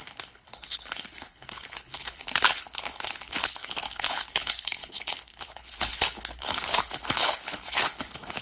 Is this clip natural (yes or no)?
no